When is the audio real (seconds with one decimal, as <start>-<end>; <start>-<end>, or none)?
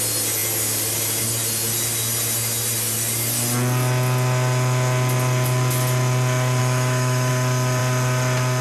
0.0-6.6; 7.3-8.6